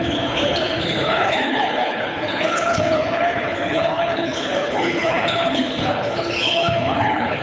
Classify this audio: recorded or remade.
remade